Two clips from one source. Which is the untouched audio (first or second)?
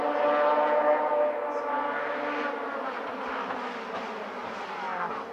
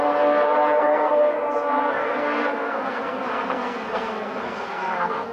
first